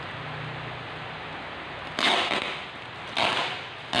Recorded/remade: recorded